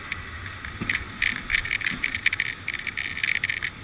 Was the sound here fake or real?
real